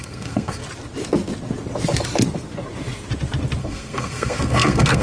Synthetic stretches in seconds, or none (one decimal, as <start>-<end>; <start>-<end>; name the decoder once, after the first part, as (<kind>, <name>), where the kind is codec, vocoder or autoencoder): 0.0-0.6 (codec, SNAC); 3.6-5.0